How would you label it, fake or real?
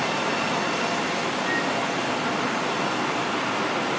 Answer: real